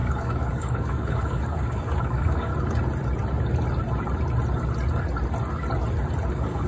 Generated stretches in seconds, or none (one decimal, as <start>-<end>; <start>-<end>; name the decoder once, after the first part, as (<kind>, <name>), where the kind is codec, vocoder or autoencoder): 0.0-2.5 (codec, DAC); 6.3-6.7